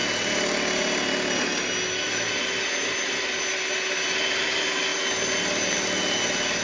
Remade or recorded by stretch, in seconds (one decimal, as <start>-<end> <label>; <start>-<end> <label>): 0.0-6.6 recorded